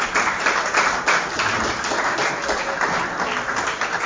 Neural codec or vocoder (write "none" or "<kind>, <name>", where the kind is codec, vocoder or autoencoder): none